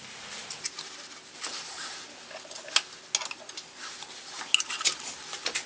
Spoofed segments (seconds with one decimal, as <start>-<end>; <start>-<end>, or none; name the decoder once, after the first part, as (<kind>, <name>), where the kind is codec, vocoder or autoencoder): none